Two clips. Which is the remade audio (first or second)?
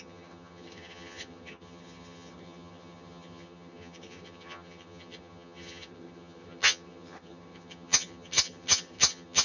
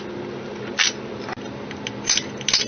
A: first